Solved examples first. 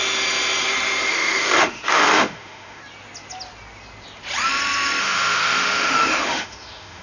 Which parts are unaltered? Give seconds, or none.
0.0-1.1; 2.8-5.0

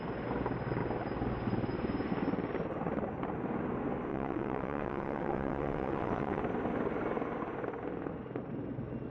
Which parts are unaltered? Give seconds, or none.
0.0-4.1; 6.4-9.1

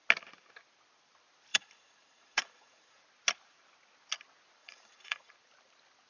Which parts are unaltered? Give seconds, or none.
0.0-1.5; 3.0-4.6; 5.3-6.1

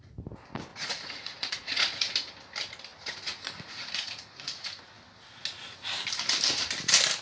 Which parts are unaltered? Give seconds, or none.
0.0-0.7; 2.1-2.9; 4.9-7.2